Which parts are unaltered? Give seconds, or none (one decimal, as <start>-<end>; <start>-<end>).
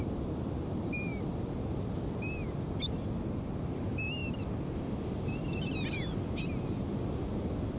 0.0-7.8